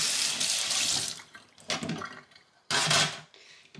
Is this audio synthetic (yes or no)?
no